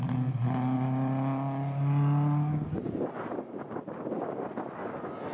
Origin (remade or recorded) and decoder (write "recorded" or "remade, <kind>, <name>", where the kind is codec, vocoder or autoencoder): recorded